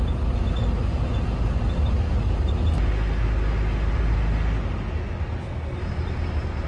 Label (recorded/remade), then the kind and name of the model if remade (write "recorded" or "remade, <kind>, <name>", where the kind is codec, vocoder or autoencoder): recorded